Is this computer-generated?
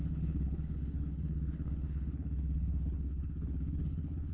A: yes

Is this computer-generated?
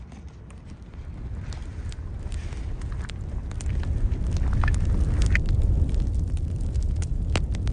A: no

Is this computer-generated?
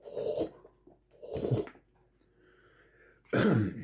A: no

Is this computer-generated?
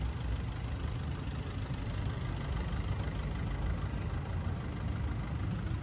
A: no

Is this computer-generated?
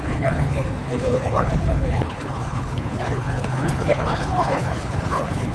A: yes